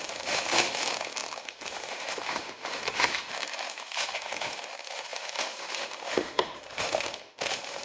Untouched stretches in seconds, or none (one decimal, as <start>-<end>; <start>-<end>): none